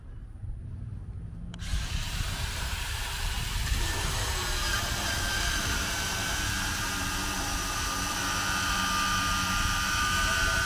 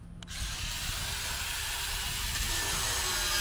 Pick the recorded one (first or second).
second